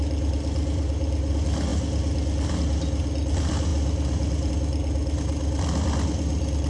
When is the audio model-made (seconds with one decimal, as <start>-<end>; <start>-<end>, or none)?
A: none